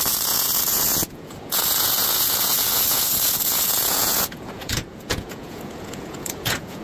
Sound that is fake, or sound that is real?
fake